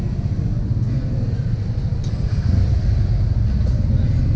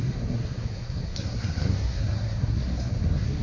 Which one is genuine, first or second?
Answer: first